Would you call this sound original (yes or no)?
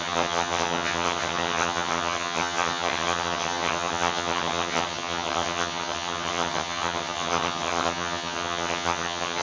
no